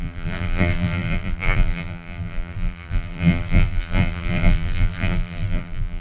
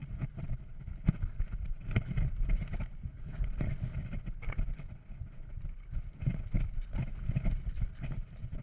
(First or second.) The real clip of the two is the second